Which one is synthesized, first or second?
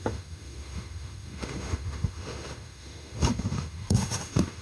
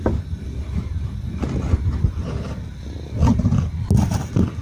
first